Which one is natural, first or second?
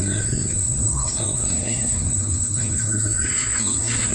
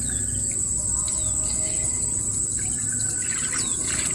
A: second